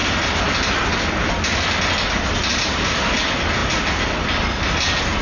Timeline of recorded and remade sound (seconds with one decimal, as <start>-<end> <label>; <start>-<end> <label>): 0.0-2.5 recorded; 2.5-3.1 remade; 3.1-5.2 recorded

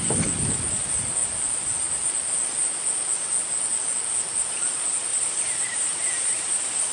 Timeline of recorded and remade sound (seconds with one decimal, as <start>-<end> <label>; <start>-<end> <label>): 0.0-5.1 recorded; 5.1-6.9 remade

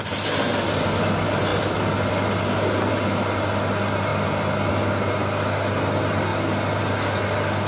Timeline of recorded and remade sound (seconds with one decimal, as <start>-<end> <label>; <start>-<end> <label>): 0.0-7.7 recorded

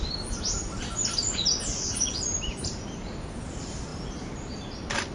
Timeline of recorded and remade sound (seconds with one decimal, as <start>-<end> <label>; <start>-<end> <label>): 0.0-5.1 remade

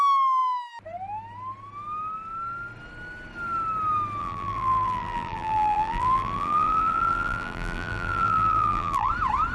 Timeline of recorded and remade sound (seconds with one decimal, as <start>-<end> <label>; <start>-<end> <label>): 0.0-4.2 recorded; 4.2-9.1 remade; 9.1-9.5 recorded

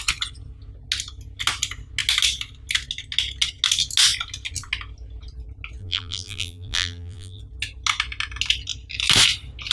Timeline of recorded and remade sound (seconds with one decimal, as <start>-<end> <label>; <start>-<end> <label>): 0.0-5.8 recorded; 5.8-7.4 remade; 7.4-9.7 recorded

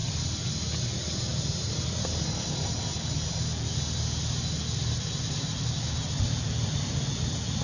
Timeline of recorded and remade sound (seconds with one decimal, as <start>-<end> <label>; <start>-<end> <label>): 0.0-0.8 remade; 0.8-1.3 recorded; 1.3-3.3 remade; 3.3-7.6 recorded